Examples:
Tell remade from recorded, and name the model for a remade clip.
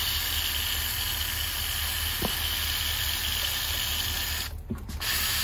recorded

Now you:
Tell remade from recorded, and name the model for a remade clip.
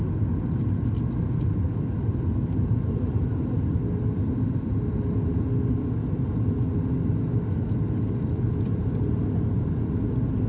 recorded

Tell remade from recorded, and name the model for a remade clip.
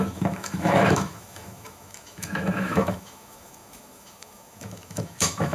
remade, autoencoder, DAC-VAE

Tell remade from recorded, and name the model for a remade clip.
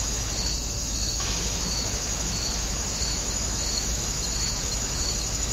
remade, autoencoder, DAC-VAE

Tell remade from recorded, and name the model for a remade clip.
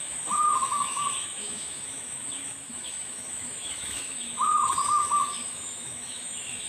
remade, autoencoder, DAC-VAE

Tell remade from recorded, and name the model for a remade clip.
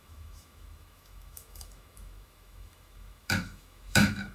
remade, autoencoder, DAC-VAE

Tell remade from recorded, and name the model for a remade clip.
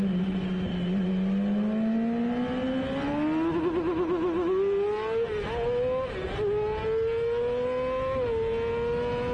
recorded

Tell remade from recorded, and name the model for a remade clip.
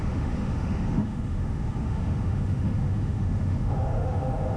remade, autoencoder, DAC-VAE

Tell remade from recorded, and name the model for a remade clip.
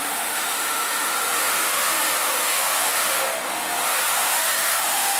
remade, autoencoder, DAC-VAE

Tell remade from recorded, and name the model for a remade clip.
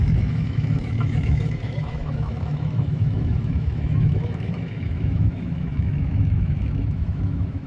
remade, autoencoder, DAC-VAE